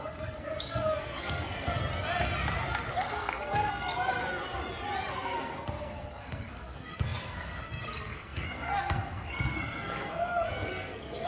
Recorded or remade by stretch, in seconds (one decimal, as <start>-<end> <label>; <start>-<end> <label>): 0.0-1.8 remade; 1.8-2.9 recorded; 2.9-4.2 remade; 4.2-5.1 recorded; 5.1-11.3 remade